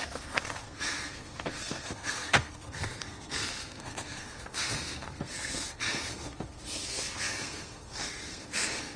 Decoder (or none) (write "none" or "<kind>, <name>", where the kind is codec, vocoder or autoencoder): codec, SNAC